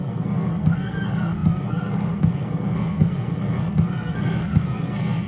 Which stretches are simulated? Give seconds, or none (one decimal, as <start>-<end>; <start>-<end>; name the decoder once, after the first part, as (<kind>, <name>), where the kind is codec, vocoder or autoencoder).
0.0-5.3 (codec, SNAC)